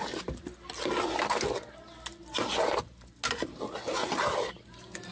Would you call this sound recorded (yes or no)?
yes